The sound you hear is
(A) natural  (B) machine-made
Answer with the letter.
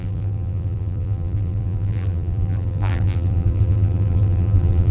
B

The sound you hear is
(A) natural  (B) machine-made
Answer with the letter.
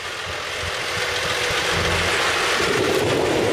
A